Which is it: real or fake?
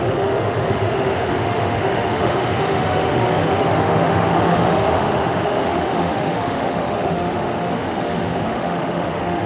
fake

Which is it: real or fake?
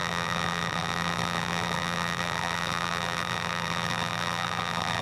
fake